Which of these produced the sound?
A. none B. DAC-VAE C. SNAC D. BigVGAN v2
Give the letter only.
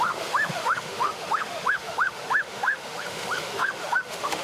B